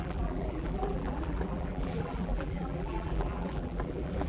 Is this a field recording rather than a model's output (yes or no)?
no